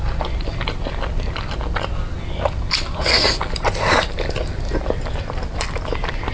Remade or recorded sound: recorded